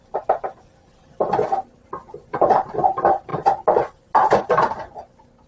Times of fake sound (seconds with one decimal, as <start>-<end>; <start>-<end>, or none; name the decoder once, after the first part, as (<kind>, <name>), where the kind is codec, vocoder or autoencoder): 2.3-2.9 (vocoder, BigVGAN v2)